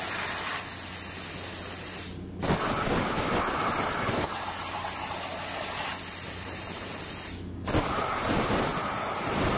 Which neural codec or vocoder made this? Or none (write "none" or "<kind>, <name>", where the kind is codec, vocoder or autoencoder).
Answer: none